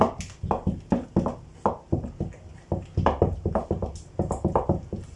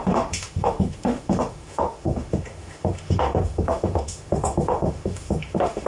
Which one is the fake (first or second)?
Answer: second